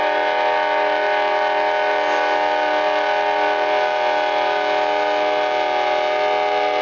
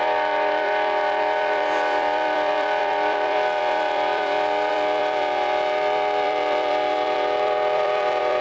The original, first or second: first